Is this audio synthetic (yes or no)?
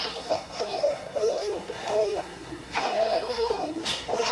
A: yes